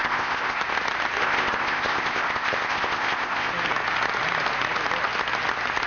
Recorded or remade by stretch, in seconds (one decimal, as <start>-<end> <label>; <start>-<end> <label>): 0.0-0.6 remade; 0.6-1.2 recorded; 1.2-3.5 remade; 3.5-5.9 recorded